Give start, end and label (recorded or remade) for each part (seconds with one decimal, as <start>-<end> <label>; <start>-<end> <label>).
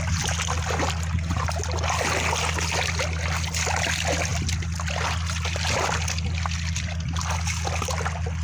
0.0-8.4 recorded